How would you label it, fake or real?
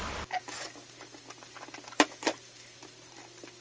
real